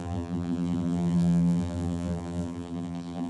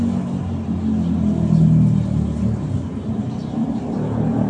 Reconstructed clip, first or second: first